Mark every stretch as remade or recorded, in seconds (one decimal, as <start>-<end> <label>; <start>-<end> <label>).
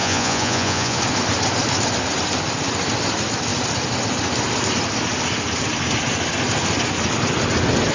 0.0-1.0 remade; 1.0-7.9 recorded